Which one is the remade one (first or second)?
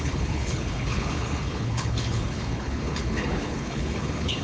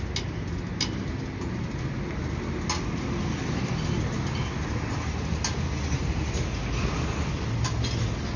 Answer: first